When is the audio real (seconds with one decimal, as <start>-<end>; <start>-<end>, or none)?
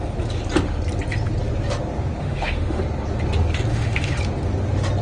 0.0-2.2; 2.8-3.7; 4.2-5.0